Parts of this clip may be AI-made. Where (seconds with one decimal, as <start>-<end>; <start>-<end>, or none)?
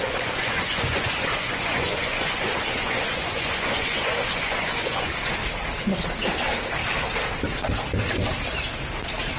0.0-5.4